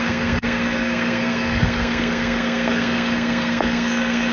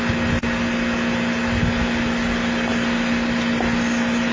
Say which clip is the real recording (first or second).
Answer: second